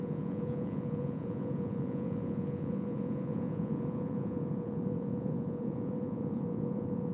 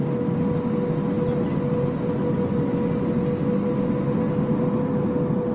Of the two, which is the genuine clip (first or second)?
second